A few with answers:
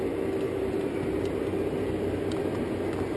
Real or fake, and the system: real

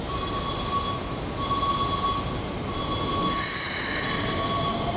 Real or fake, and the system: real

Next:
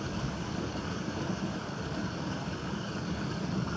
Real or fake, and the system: fake, codec, DAC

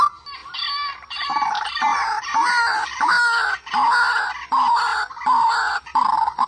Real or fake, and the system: real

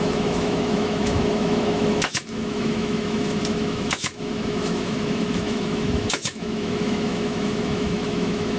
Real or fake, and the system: fake, autoencoder, DAC-VAE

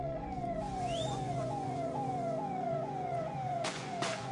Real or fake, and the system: fake, vocoder, Vocos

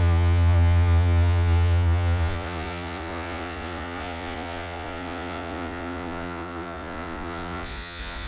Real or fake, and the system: fake, vocoder, Vocos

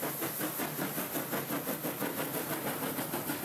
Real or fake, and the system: real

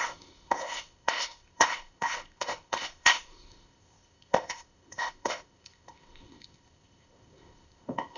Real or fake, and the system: fake, codec, ZipCodec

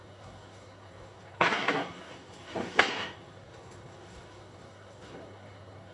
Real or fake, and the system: fake, codec, SNAC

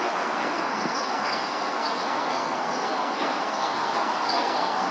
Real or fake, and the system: fake, codec, SNAC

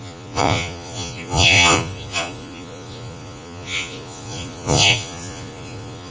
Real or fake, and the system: fake, vocoder, Vocos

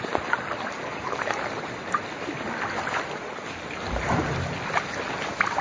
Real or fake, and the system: real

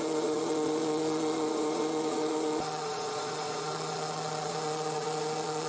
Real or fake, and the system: fake, vocoder, Vocos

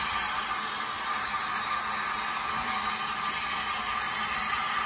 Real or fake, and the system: real